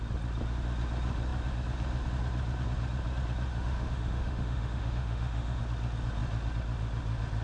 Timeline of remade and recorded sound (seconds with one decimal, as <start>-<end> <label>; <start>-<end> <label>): 0.0-3.5 recorded; 3.5-5.6 remade; 5.6-7.4 recorded

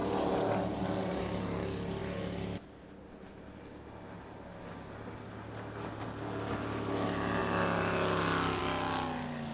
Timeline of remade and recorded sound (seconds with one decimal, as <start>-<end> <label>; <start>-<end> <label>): 0.0-9.5 recorded

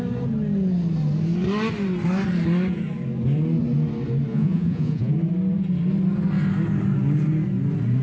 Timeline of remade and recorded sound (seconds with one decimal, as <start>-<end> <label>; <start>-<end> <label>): 0.0-4.3 recorded; 4.3-5.1 remade; 5.1-8.0 recorded

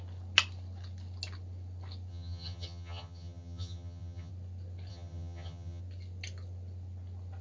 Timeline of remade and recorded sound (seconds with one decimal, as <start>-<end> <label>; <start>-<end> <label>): 0.0-2.1 recorded; 2.1-4.3 remade; 4.3-4.9 recorded; 4.9-5.8 remade; 5.8-7.4 recorded

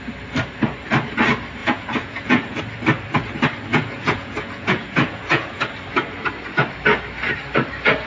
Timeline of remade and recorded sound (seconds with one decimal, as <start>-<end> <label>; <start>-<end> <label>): 0.0-1.6 recorded; 1.6-2.6 remade; 2.6-3.7 recorded; 3.7-5.6 remade; 5.6-8.1 recorded

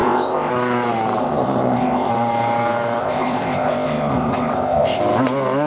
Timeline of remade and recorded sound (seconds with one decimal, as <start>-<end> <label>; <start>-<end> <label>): 0.0-0.5 remade; 0.5-1.2 recorded; 1.2-2.1 remade; 2.1-3.0 recorded; 3.0-5.0 remade; 5.0-5.7 recorded

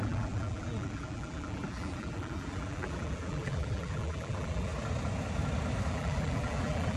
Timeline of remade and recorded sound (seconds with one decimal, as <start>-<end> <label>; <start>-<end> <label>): 0.0-4.7 remade; 4.7-5.9 recorded; 5.9-7.0 remade